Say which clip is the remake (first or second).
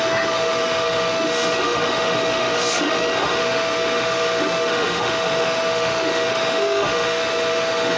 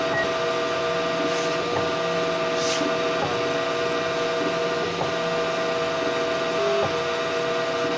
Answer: first